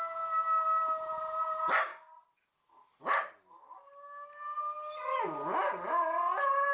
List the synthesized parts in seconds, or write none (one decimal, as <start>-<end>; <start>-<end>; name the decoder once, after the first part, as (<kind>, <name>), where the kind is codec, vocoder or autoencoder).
none